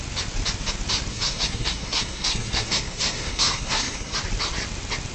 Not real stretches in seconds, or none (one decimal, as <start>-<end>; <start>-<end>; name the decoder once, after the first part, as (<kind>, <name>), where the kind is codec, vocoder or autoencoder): 1.1-4.2 (codec, SNAC)